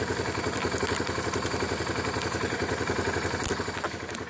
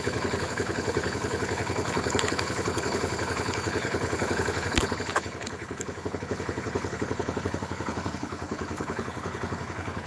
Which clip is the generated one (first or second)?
second